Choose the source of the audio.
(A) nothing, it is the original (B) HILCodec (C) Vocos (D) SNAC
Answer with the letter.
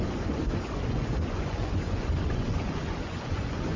C